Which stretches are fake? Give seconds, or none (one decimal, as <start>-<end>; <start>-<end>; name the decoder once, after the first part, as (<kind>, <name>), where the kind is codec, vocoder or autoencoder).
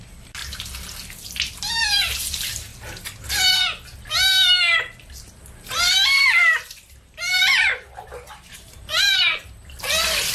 0.0-0.4 (vocoder, BigVGAN v2); 1.7-2.7; 5.9-7.7; 8.5-10.3